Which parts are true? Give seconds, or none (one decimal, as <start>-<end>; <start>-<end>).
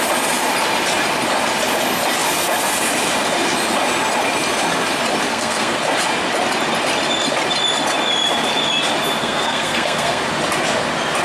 0.0-5.3; 5.8-9.2; 10.2-11.2